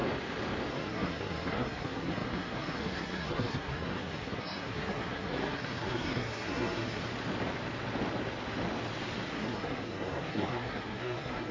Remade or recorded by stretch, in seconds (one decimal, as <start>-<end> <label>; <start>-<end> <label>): 0.0-0.7 recorded; 0.7-7.0 remade; 7.0-9.3 recorded; 9.3-11.5 remade